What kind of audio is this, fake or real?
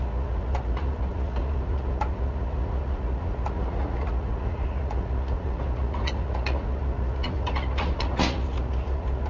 fake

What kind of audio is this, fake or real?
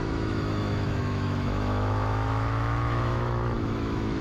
fake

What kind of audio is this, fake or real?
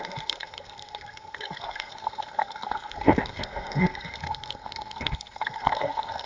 fake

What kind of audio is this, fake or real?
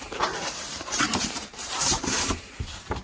fake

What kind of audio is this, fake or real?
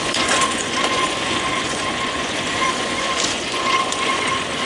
fake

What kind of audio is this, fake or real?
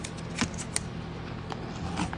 real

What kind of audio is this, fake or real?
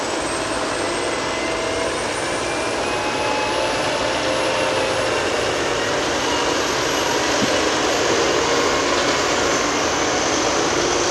real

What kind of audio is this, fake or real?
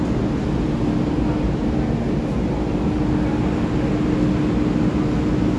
real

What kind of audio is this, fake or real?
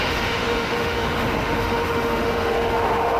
fake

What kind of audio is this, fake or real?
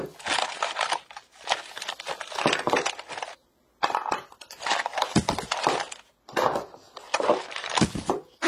real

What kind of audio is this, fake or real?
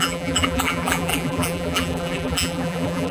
fake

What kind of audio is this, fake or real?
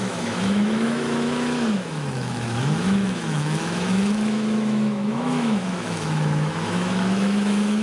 fake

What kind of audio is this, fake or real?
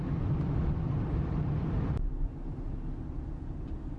real